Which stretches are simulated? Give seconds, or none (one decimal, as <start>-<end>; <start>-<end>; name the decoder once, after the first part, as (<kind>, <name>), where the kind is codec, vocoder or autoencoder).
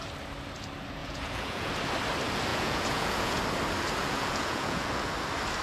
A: 1.0-1.7 (vocoder, Vocos); 2.5-3.4; 4.0-5.1